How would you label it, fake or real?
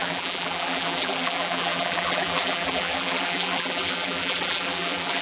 fake